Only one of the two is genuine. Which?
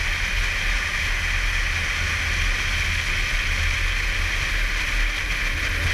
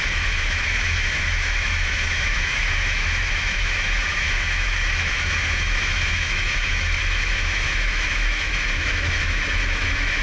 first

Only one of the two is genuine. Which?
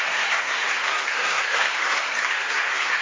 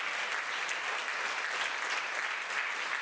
second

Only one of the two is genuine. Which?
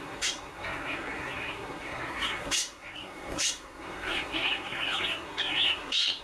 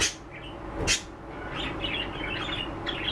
second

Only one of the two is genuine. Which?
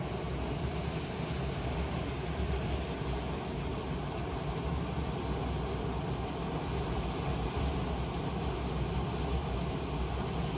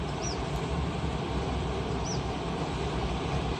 first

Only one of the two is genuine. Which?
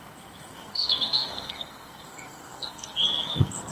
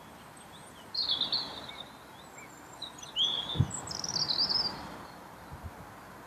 second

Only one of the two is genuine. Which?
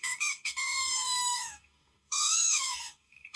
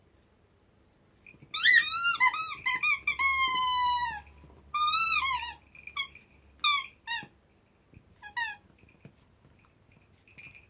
second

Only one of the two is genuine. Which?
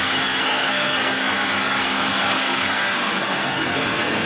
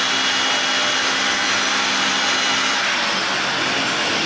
second